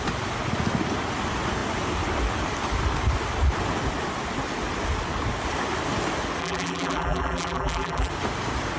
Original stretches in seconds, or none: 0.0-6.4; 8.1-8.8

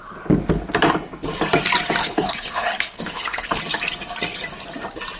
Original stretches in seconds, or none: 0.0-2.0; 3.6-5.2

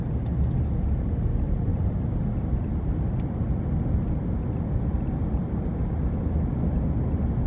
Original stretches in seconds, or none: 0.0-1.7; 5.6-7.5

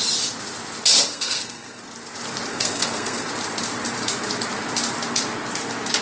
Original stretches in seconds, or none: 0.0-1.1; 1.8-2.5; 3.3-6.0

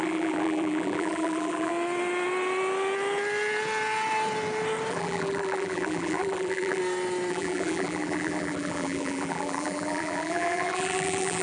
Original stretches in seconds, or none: 1.7-4.9; 6.8-7.3

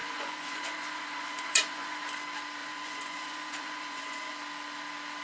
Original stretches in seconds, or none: 2.1-2.6; 4.3-5.2